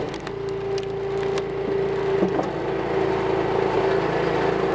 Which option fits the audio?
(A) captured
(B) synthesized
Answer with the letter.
A